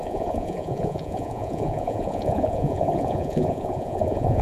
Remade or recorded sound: remade